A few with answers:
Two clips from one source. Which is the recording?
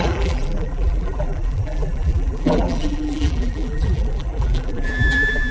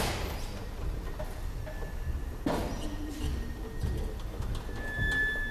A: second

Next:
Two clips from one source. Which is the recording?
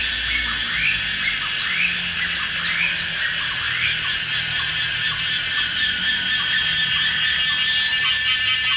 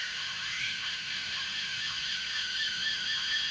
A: first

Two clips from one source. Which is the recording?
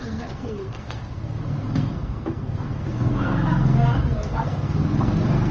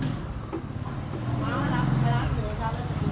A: second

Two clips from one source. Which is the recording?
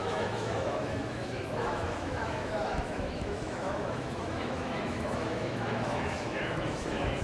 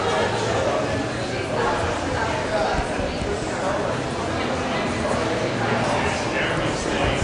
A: second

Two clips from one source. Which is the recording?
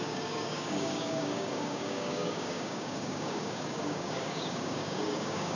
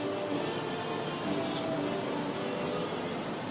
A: second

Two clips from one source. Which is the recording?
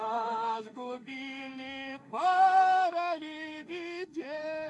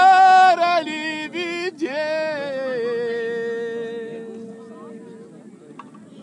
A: second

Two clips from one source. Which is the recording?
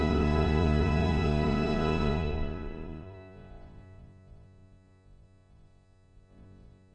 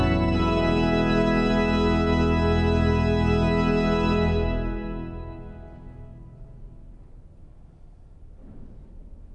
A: second